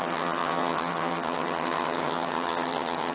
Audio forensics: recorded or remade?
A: remade